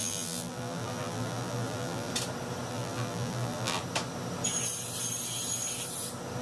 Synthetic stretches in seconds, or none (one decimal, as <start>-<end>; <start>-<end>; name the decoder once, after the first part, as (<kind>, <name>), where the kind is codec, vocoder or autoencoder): 0.0-2.1 (vocoder, BigVGAN v2); 2.7-3.8